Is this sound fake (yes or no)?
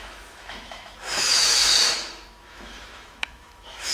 yes